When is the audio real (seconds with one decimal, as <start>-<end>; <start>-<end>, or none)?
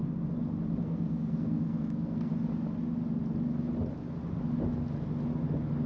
0.0-0.8; 2.3-5.9